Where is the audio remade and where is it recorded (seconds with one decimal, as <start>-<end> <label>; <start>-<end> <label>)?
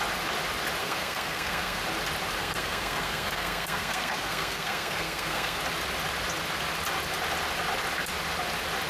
0.0-0.8 recorded; 0.8-1.8 remade; 1.8-2.4 recorded; 2.4-5.6 remade; 5.6-8.9 recorded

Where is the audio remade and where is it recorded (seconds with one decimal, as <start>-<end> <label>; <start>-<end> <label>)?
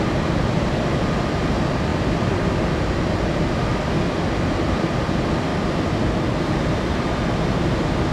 0.0-5.5 recorded; 5.5-7.2 remade; 7.2-8.1 recorded